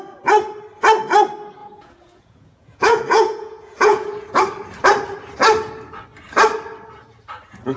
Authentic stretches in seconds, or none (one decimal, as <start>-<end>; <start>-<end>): 0.0-1.6; 4.4-7.8

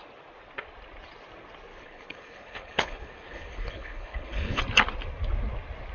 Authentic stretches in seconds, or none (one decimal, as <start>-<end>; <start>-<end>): 0.0-1.7; 4.6-5.9

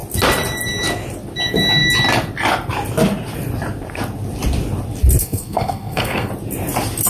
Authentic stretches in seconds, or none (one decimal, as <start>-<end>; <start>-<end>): 0.0-5.2; 6.3-7.1

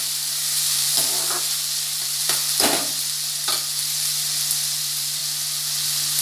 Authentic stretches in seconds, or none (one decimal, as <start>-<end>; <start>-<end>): 0.9-2.0; 2.4-4.8; 5.2-6.2

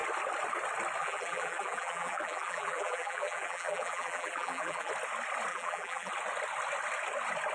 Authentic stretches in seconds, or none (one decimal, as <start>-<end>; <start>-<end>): 0.0-1.0; 4.9-5.5; 6.1-7.5

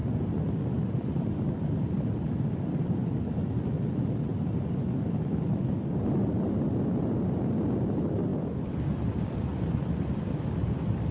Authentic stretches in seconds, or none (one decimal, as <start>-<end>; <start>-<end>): 0.0-1.0; 4.3-5.6